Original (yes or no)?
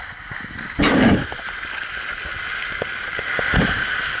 yes